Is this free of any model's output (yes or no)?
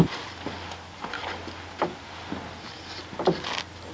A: yes